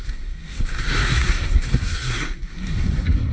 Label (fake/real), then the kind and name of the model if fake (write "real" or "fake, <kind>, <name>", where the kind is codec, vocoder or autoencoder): fake, codec, SNAC